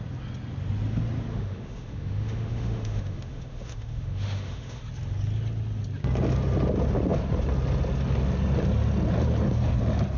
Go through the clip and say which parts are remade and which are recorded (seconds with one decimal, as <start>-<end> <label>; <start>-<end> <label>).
0.0-1.3 recorded; 1.3-4.8 remade; 4.8-10.2 recorded